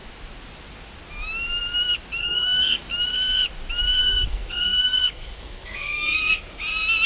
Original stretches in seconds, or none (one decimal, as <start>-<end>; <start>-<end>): 0.0-2.2; 2.8-4.0; 6.6-7.1